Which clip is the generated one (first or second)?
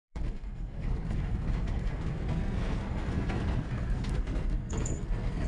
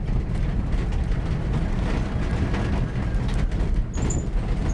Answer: first